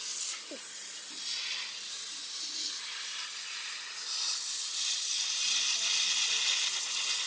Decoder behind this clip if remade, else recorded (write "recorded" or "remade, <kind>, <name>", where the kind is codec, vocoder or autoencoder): recorded